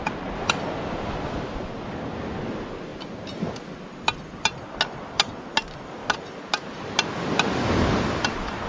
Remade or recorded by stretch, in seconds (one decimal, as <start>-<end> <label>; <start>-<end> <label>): 0.0-8.7 recorded